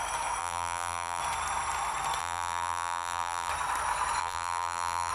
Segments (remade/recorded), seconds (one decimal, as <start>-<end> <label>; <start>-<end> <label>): 0.0-0.4 recorded; 0.4-1.2 remade; 1.2-2.2 recorded; 2.2-3.5 remade; 3.5-4.2 recorded; 4.2-5.1 remade